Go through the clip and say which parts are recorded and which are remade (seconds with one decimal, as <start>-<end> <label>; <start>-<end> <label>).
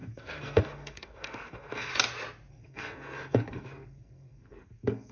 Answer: 0.0-1.9 remade; 1.9-2.5 recorded; 2.5-5.1 remade